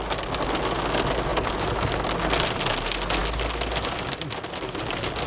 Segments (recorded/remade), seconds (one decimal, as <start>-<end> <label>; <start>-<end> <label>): 0.0-1.3 recorded; 1.3-1.9 remade; 1.9-5.3 recorded